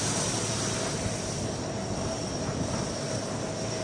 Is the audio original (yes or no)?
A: yes